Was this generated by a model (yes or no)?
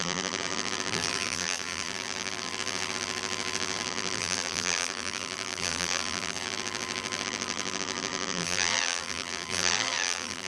yes